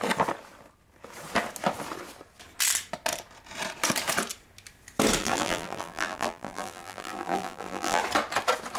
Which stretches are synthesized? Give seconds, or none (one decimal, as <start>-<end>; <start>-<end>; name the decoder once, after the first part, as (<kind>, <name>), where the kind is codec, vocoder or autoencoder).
5.2-8.0 (vocoder, BigVGAN v2)